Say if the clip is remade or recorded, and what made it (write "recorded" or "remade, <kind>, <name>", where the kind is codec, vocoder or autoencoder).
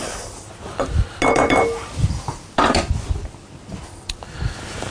recorded